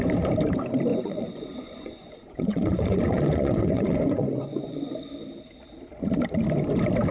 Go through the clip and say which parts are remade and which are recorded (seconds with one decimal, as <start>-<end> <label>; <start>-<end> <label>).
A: 0.0-0.9 recorded; 0.9-4.9 remade; 4.9-7.1 recorded